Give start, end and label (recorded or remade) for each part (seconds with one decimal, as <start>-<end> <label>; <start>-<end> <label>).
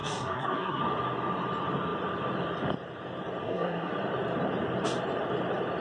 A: 0.0-0.8 remade; 0.8-3.4 recorded; 3.4-3.9 remade; 3.9-5.8 recorded